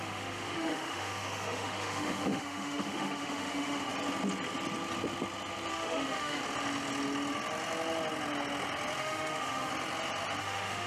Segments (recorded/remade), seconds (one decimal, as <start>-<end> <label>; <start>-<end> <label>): 0.0-3.9 remade; 3.9-5.7 recorded; 5.7-6.4 remade; 6.4-9.0 recorded; 9.0-9.7 remade; 9.7-10.4 recorded; 10.4-10.9 remade